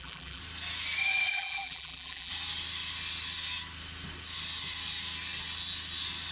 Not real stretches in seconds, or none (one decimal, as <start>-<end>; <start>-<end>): 0.0-0.4; 1.3-2.3